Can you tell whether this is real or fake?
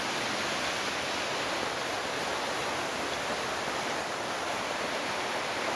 real